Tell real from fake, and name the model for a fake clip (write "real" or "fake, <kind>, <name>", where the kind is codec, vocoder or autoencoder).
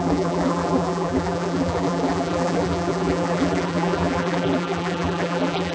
fake, vocoder, BigVGAN v2